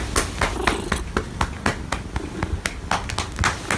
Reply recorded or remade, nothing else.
recorded